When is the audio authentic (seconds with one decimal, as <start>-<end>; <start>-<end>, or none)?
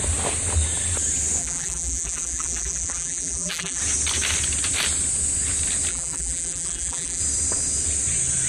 0.0-1.4; 3.8-5.9; 7.2-8.5